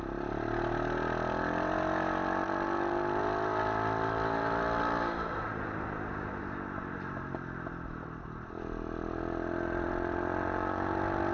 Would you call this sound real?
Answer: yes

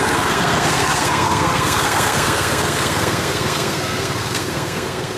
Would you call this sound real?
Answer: no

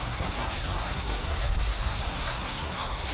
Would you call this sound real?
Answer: no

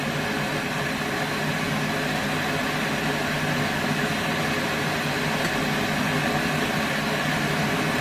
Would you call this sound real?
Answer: yes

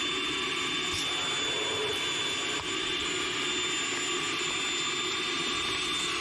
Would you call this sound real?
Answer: yes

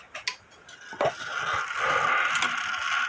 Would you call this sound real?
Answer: yes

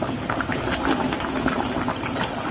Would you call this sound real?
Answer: yes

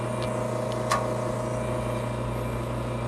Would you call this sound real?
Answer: yes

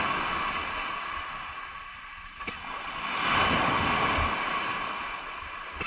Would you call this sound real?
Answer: yes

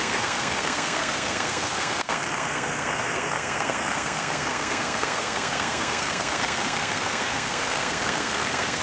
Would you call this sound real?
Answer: no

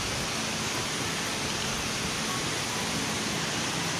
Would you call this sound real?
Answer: yes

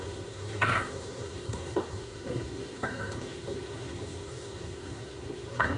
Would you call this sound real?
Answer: no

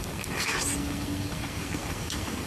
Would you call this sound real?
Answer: no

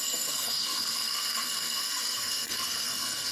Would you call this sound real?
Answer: no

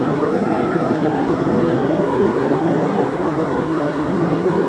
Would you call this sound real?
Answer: no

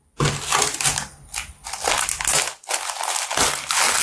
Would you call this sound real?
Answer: yes